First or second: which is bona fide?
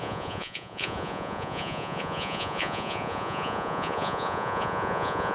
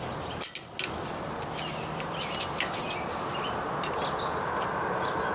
second